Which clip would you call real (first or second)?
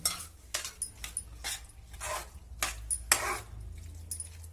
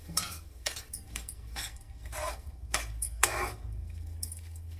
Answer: first